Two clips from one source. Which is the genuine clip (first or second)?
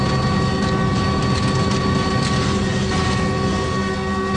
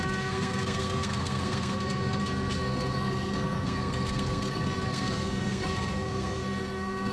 first